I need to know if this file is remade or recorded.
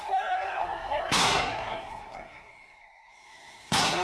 remade